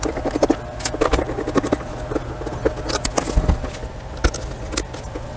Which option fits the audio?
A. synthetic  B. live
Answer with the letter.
B